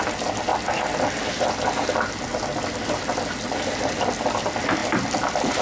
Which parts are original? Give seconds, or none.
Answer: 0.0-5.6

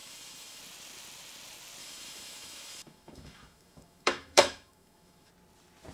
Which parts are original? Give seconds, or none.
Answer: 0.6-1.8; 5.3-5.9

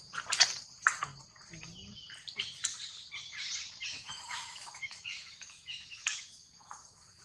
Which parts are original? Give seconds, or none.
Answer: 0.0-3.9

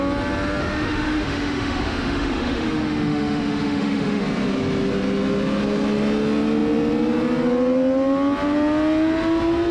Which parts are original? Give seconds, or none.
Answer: 0.0-0.6; 4.2-9.7

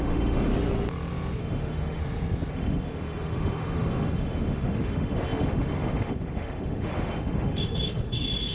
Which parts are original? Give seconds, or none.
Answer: 0.5-1.4; 2.0-2.5